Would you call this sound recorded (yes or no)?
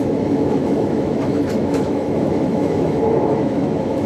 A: no